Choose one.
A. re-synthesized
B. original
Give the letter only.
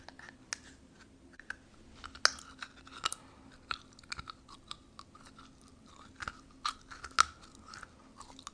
B